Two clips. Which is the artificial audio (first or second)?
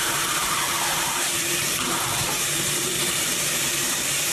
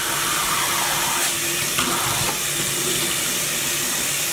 first